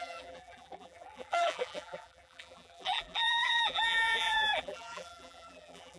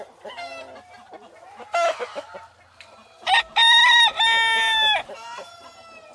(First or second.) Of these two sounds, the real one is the second